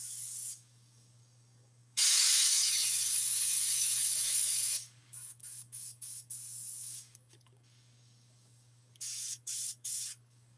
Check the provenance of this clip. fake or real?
fake